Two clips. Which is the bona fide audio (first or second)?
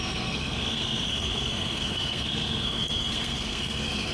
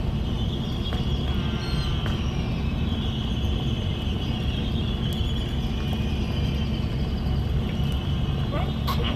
second